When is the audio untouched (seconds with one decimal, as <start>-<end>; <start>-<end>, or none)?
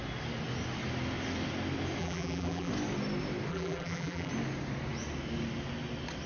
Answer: 0.0-2.0; 2.7-3.5; 4.3-6.3